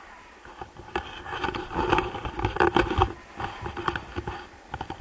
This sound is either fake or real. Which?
real